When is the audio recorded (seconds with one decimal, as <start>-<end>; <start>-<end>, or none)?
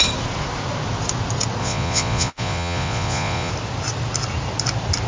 0.0-1.6; 3.5-5.1